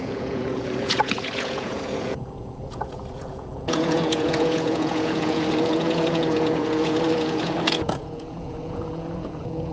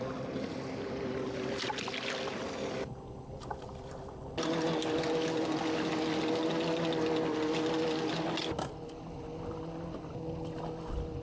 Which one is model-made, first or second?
first